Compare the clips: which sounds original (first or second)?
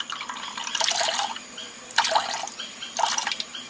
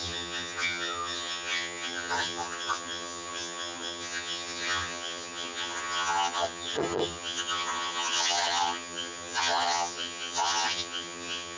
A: first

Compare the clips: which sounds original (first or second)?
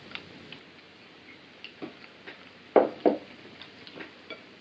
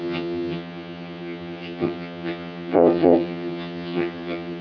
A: first